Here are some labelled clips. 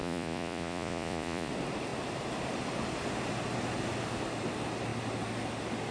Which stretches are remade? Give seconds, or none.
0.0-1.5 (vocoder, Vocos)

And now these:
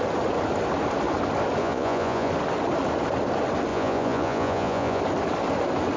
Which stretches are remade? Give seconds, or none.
1.6-2.3 (vocoder, Vocos); 3.7-5.0

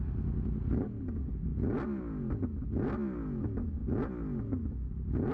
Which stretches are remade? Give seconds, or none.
none

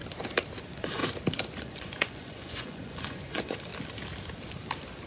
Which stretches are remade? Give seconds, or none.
0.6-1.0 (vocoder, Vocos); 1.6-3.7

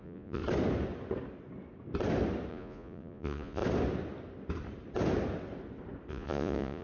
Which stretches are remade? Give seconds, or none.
0.0-0.4 (vocoder, Vocos); 2.5-3.6; 6.1-6.8